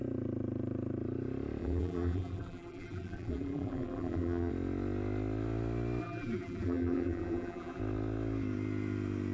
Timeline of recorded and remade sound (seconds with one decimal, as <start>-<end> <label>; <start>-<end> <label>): 0.0-1.6 recorded; 1.6-4.5 remade; 4.5-6.0 recorded; 6.0-7.8 remade; 7.8-9.3 recorded